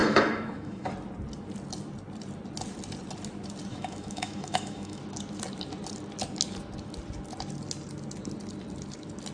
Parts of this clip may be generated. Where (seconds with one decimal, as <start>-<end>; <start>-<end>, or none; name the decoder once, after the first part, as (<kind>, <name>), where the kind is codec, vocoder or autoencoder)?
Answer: 0.0-0.9 (autoencoder, DAC-VAE); 3.7-5.0